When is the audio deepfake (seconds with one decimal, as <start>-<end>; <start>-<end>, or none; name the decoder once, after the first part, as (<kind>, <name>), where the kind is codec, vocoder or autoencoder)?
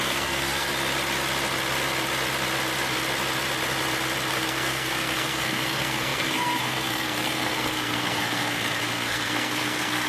0.0-0.7 (codec, SNAC); 4.3-10.1